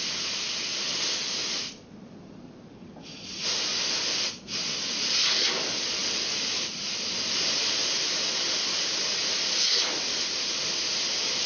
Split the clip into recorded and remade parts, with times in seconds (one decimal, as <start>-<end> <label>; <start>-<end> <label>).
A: 0.0-11.5 recorded